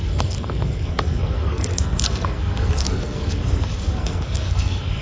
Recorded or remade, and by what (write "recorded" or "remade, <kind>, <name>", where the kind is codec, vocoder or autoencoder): remade, codec, SNAC